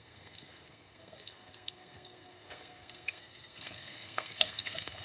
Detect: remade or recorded remade